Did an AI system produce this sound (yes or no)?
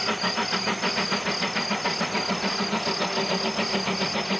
no